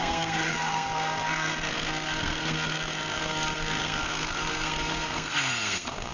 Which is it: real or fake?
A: fake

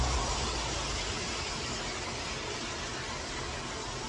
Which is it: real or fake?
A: real